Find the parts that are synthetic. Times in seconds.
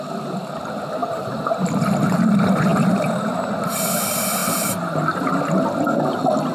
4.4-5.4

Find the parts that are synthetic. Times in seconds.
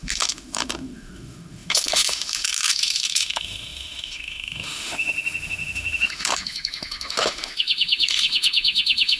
0.0-9.2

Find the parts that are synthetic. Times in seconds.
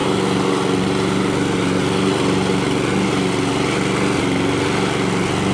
none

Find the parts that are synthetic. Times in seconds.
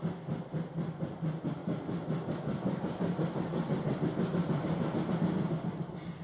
none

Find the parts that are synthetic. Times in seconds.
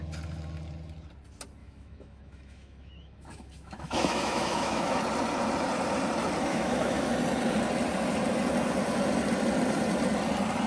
1.6-5.0; 6.5-7.1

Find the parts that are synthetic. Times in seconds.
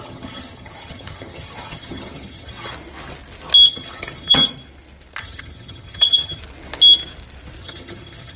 0.0-2.7; 3.7-4.4; 5.2-6.4; 7.6-8.4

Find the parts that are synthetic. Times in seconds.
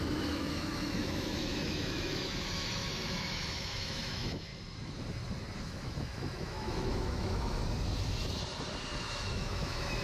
0.0-4.5; 5.6-7.6; 9.0-10.0